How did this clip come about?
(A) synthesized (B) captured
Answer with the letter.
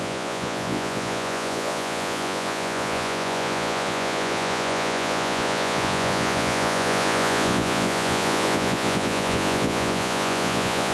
A